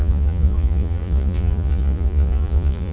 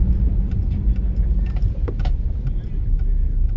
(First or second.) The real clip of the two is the second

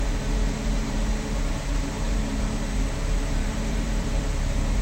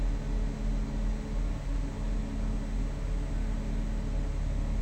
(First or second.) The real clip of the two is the second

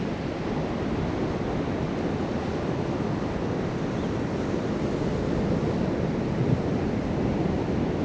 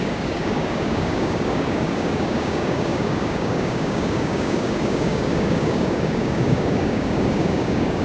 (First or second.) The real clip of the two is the first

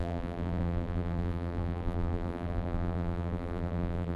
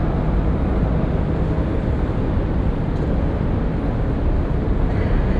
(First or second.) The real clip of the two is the second